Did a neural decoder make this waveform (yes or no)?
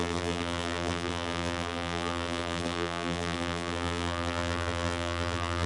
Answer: yes